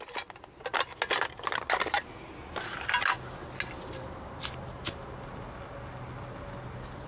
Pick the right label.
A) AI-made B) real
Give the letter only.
B